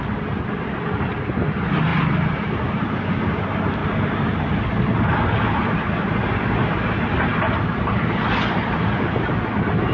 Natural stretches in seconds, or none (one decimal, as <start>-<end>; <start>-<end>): 0.0-9.9